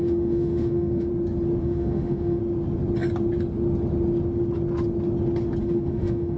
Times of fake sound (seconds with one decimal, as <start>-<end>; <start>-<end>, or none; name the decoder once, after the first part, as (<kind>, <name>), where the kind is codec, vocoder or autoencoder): 0.0-1.1 (autoencoder, DAC-VAE); 1.6-2.4; 5.6-6.4